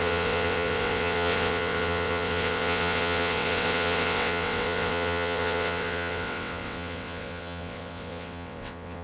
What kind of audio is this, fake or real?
fake